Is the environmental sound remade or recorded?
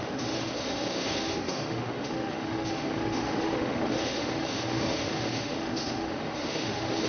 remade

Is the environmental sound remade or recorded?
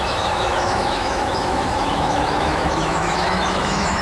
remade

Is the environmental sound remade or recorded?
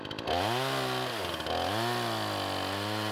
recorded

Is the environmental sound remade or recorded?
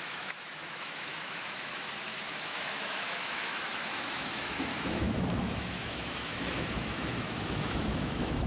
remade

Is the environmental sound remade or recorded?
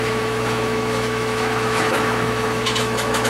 remade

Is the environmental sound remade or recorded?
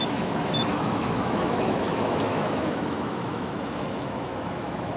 remade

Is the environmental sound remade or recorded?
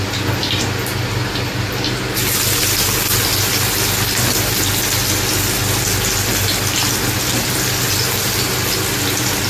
recorded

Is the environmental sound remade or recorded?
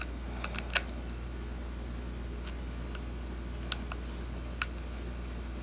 recorded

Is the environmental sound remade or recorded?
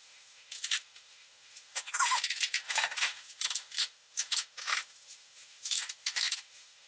remade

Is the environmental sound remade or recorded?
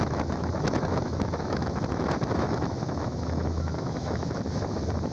remade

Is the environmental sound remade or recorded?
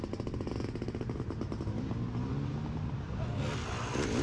recorded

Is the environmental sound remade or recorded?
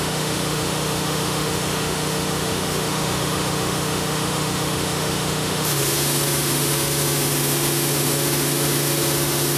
remade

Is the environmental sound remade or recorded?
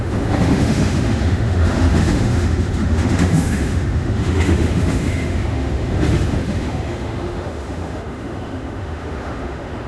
remade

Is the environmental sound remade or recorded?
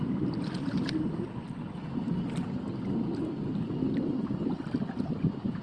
recorded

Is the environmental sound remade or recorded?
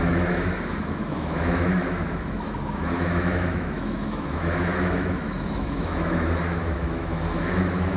remade